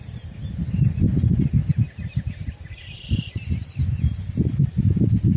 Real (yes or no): no